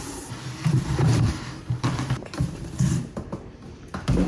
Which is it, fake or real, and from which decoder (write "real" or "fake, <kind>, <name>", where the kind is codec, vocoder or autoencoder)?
fake, vocoder, BigVGAN v2